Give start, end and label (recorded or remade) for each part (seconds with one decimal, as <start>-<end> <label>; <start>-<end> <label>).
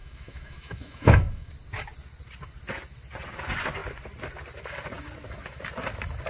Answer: 0.0-1.5 remade; 1.5-6.3 recorded